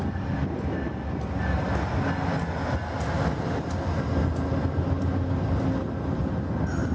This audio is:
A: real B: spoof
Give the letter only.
A